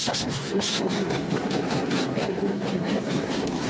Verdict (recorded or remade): remade